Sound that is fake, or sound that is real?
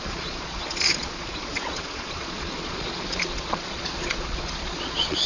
fake